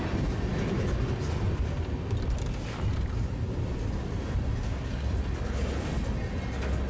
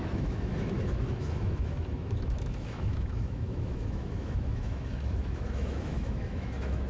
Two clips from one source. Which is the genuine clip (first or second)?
first